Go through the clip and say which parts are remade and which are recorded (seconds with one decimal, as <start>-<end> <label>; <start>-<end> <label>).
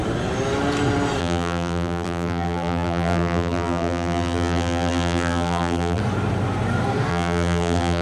0.0-1.2 recorded; 1.2-6.0 remade; 6.0-7.1 recorded; 7.1-8.0 remade